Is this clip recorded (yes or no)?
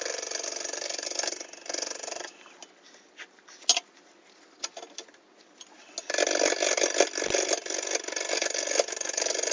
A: yes